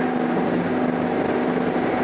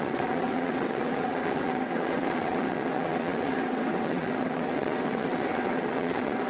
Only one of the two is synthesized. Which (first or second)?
second